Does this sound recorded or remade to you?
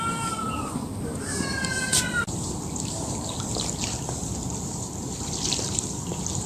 remade